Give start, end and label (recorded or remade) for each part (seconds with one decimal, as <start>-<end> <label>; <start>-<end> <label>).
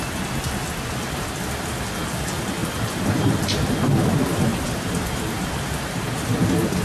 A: 0.0-4.5 recorded; 4.5-5.5 remade; 5.5-6.8 recorded